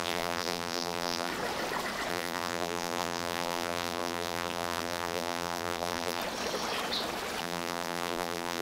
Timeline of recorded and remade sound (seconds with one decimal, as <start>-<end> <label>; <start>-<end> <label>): 0.0-1.3 remade; 1.3-2.1 recorded; 2.1-6.2 remade; 6.2-7.4 recorded; 7.4-8.6 remade